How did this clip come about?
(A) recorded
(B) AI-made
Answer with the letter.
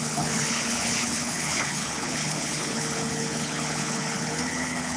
B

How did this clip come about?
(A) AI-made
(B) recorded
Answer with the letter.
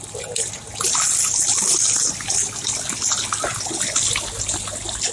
B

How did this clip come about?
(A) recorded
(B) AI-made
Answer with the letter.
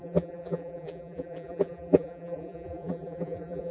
B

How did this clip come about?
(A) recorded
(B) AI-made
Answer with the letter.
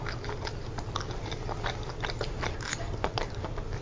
A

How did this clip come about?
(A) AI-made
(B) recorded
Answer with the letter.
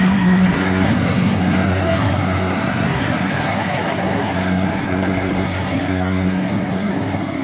A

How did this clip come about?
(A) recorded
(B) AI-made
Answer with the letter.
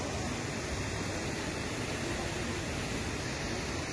A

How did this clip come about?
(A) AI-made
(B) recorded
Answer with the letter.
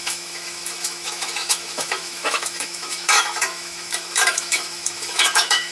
A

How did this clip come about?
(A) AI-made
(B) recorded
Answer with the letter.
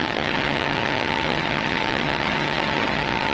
A